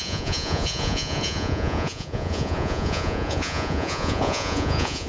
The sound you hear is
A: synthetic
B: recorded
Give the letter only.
A